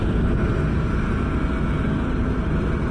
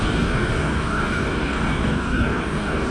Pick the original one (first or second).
first